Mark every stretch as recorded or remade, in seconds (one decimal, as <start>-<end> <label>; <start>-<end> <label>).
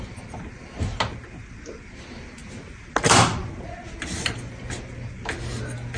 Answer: 0.0-6.0 recorded